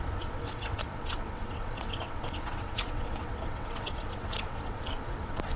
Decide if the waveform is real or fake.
fake